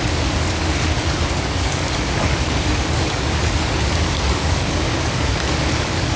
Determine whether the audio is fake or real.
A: fake